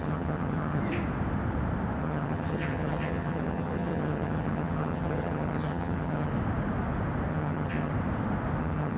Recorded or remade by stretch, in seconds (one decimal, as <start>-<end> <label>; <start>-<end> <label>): 0.0-0.8 remade; 0.8-2.0 recorded; 2.0-6.3 remade; 6.3-7.3 recorded; 7.3-7.9 remade; 7.9-8.6 recorded; 8.6-9.0 remade